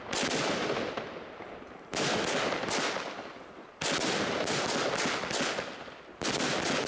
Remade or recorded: recorded